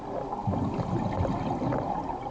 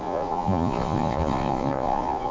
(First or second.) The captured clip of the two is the first